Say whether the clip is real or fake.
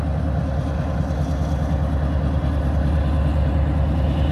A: real